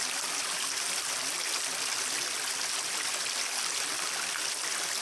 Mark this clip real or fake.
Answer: real